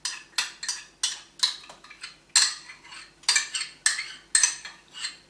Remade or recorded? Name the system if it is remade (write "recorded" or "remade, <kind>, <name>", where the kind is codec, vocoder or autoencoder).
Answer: recorded